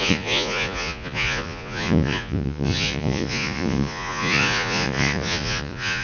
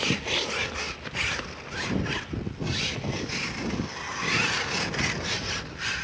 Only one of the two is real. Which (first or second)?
second